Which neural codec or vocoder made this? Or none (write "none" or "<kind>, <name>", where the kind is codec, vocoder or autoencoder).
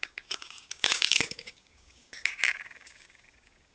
codec, DAC